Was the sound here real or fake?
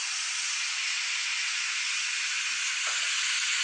real